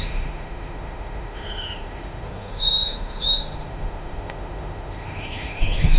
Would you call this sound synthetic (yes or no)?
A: yes